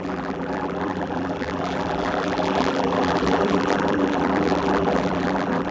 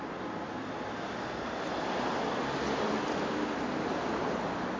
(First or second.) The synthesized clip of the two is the first